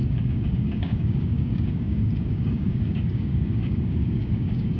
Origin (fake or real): fake